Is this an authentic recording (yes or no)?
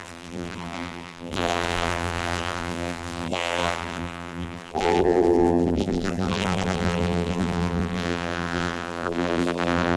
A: no